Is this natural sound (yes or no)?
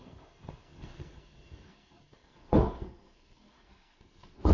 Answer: no